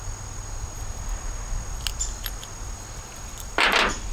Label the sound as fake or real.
real